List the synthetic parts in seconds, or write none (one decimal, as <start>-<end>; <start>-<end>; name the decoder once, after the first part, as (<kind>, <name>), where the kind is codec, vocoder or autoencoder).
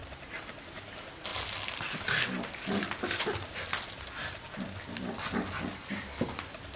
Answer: none